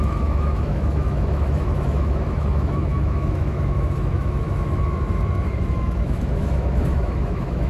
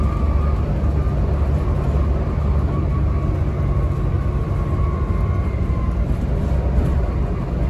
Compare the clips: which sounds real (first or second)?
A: second